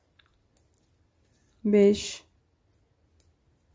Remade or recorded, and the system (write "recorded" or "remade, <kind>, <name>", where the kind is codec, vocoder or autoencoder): recorded